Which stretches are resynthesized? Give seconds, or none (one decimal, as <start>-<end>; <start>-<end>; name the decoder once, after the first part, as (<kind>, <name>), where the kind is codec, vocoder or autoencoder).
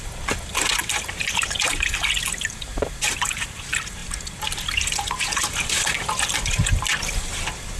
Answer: none